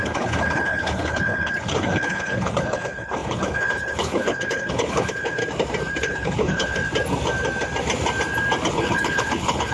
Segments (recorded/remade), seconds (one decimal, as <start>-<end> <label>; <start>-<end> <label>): 0.0-5.4 remade; 5.4-6.0 recorded; 6.0-6.8 remade; 6.8-8.7 recorded; 8.7-9.7 remade